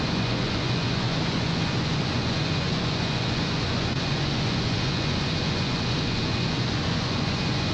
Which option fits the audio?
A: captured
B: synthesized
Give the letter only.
B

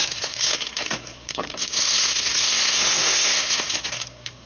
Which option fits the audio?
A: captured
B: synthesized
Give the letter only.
B